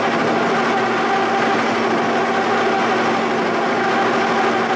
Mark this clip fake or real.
real